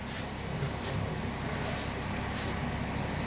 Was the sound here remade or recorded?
recorded